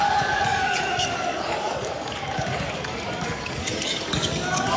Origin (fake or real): fake